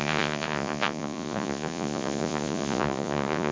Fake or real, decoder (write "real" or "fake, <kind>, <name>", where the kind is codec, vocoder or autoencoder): fake, vocoder, Vocos